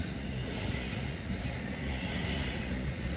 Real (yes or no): no